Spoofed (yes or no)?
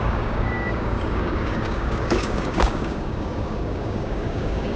yes